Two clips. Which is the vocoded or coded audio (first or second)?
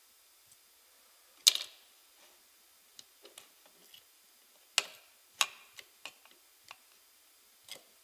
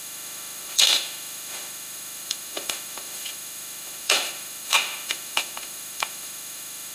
second